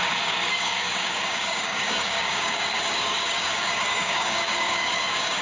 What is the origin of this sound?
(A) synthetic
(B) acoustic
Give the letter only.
A